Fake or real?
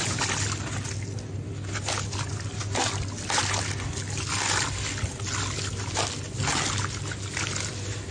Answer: real